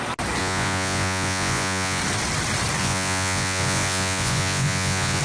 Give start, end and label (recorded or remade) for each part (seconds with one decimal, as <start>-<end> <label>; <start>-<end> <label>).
0.0-0.4 recorded; 0.4-2.0 remade; 2.0-2.8 recorded; 2.8-5.2 remade